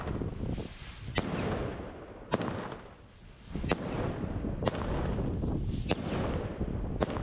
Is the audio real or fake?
real